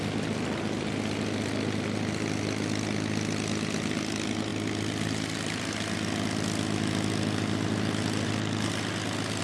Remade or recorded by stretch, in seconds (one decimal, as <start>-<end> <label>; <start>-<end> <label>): 0.0-9.4 recorded